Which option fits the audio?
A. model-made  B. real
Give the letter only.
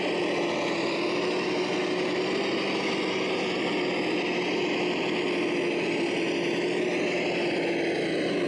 B